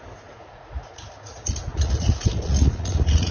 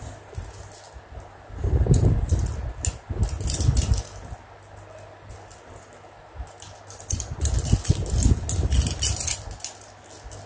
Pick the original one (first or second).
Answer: second